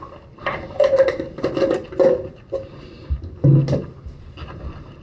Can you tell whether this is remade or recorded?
recorded